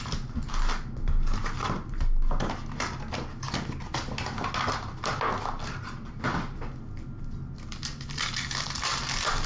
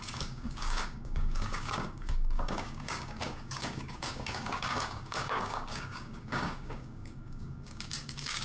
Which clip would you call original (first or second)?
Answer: first